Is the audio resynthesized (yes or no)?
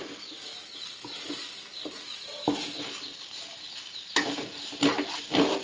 no